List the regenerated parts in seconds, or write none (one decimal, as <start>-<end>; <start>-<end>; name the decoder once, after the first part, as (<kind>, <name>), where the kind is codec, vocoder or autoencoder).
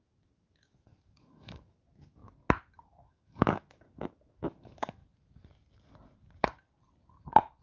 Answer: 0.0-2.2 (autoencoder, DAC-VAE); 2.8-5.0